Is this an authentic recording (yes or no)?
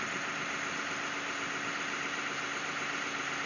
yes